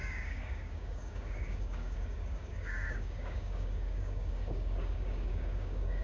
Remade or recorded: remade